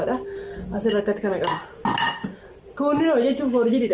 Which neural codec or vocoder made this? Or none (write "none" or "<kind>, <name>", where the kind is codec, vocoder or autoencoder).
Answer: none